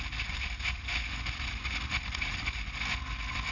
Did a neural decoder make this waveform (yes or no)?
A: no